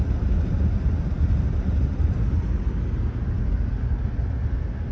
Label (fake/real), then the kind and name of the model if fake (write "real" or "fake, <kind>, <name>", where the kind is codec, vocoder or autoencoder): real